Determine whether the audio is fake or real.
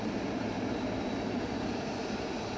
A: fake